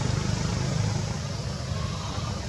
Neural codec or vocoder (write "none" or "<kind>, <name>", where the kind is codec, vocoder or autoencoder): none